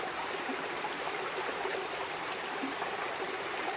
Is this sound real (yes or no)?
yes